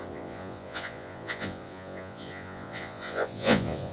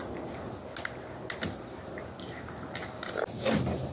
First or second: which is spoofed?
first